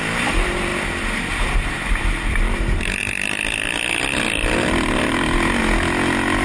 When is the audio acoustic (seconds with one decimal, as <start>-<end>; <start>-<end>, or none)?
0.0-6.4